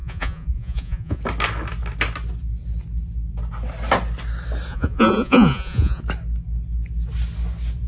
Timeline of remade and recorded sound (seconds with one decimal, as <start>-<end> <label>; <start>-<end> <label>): 0.0-1.2 remade; 1.2-4.7 recorded; 4.7-6.0 remade; 6.0-7.9 recorded

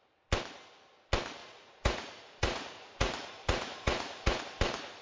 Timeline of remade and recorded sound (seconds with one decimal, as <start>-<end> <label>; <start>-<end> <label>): 0.0-1.4 recorded; 1.4-4.4 remade; 4.4-5.0 recorded

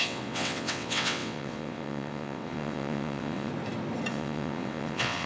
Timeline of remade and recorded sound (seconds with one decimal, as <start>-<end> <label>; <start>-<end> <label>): 0.0-3.5 remade; 3.5-4.1 recorded; 4.1-5.3 remade

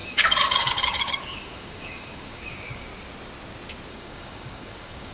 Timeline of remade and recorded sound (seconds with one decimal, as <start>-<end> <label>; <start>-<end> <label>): 0.0-2.9 remade; 2.9-3.9 recorded; 3.9-5.1 remade

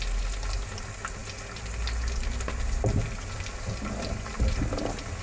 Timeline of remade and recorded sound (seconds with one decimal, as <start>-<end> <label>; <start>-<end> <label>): 0.0-5.2 recorded

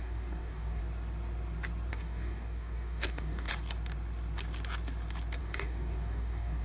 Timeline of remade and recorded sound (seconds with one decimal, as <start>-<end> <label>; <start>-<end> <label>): 0.0-0.8 remade; 0.8-1.9 recorded; 1.9-3.5 remade; 3.5-5.4 recorded; 5.4-6.6 remade